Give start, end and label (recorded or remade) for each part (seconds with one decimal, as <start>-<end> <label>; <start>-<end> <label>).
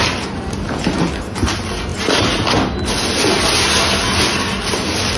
0.0-5.2 recorded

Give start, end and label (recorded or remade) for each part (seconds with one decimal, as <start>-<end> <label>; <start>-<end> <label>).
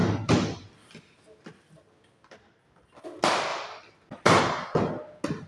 0.0-3.5 recorded; 3.5-4.4 remade; 4.4-5.5 recorded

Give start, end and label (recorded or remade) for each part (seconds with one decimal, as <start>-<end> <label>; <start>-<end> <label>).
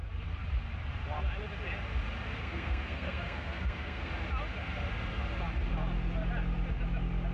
0.0-2.4 recorded; 2.4-4.1 remade; 4.1-7.3 recorded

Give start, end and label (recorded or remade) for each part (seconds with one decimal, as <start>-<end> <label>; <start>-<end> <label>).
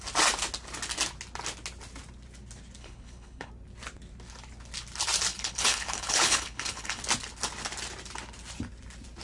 0.0-2.8 recorded; 2.8-3.5 remade; 3.5-5.3 recorded; 5.3-7.0 remade; 7.0-9.2 recorded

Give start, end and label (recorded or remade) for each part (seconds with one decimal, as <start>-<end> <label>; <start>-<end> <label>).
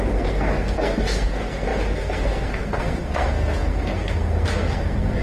0.0-5.2 remade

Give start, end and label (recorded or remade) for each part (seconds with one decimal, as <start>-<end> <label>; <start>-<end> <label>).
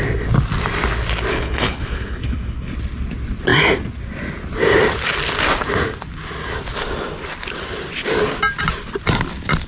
0.0-1.3 recorded; 1.3-2.7 remade; 2.7-9.7 recorded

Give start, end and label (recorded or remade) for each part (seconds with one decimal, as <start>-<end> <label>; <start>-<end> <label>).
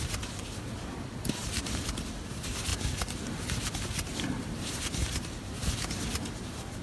0.0-6.8 recorded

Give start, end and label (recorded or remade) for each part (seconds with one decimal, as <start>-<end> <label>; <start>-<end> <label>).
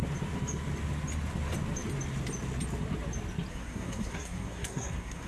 0.0-3.5 recorded; 3.5-5.3 remade